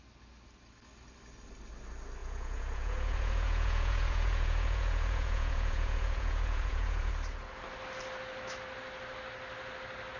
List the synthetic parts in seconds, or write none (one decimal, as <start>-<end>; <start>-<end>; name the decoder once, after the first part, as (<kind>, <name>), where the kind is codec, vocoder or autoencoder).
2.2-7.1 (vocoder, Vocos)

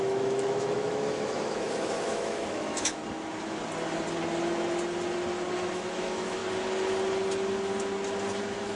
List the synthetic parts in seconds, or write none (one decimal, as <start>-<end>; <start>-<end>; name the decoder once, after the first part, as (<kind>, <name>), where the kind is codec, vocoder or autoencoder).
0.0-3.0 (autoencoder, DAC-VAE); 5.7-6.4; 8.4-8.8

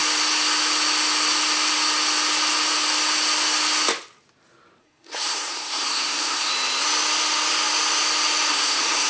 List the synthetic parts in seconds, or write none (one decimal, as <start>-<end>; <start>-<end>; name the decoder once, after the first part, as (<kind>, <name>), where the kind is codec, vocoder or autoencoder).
4.8-6.5 (codec, SNAC); 8.5-9.1

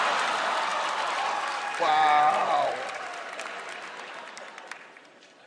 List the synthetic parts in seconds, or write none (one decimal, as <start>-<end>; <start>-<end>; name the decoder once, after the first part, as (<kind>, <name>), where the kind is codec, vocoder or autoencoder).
0.0-0.7 (vocoder, BigVGAN v2); 1.6-5.5

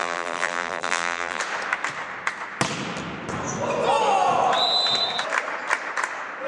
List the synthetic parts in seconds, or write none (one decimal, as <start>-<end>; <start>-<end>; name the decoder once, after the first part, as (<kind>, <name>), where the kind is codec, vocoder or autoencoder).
0.0-1.4 (vocoder, BigVGAN v2)